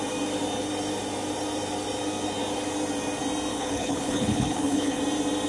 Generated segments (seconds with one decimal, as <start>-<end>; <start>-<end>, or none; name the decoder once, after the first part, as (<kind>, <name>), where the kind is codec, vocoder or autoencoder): 3.5-5.0 (codec, HILCodec)